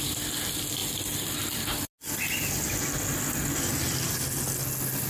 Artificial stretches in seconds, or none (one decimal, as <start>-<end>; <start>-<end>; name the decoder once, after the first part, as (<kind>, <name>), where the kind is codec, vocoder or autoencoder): none